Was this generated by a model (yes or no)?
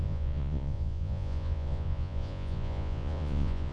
yes